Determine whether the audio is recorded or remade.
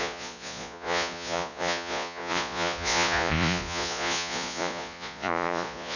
remade